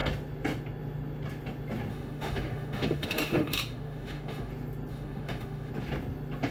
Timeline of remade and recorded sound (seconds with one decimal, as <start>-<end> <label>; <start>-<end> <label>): 0.0-1.9 recorded; 1.9-4.5 remade; 4.5-4.9 recorded; 4.9-5.7 remade; 5.7-6.5 recorded